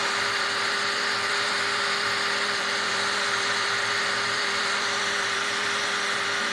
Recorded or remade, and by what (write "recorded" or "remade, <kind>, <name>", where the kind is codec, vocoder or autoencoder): remade, vocoder, BigVGAN v2